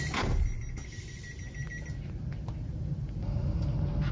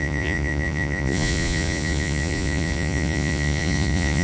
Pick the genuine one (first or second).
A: first